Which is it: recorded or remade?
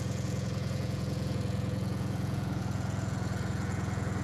remade